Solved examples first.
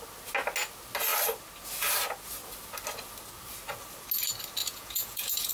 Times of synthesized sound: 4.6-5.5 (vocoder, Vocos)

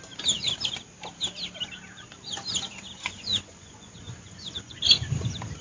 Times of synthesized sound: 3.0-4.8 (vocoder, Vocos)

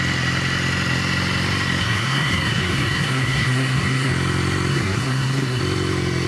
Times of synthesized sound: 1.8-4.1 (codec, SNAC); 4.7-5.6

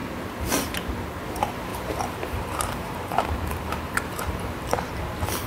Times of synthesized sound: 1.7-5.0 (vocoder, BigVGAN v2)

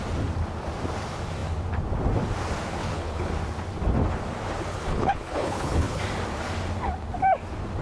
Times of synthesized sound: 2.8-3.3 (codec, HILCodec); 4.7-6.0

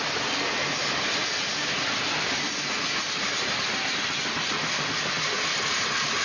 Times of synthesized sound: 1.2-3.9 (vocoder, BigVGAN v2)

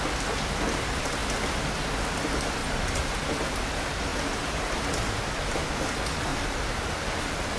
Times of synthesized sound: 2.6-3.4 (vocoder, BigVGAN v2); 4.1-4.8; 6.3-6.9

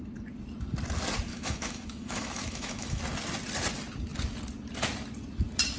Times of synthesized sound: 1.3-3.0 (autoencoder, DAC-VAE)